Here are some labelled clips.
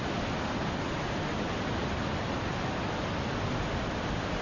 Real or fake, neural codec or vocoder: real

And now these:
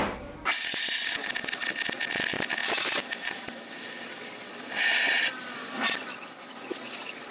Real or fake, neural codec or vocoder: real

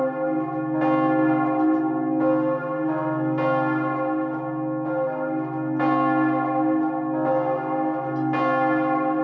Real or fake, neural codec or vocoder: real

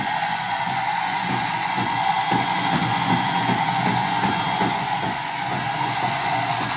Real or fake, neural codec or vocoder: fake, vocoder, Vocos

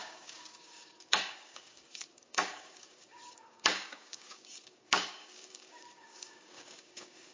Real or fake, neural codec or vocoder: fake, codec, DAC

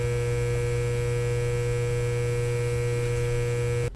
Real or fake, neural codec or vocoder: real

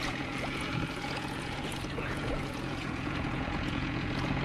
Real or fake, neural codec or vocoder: fake, vocoder, Vocos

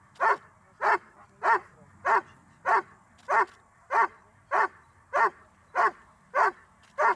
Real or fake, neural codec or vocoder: real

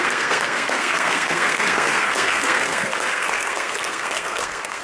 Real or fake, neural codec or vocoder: fake, codec, SNAC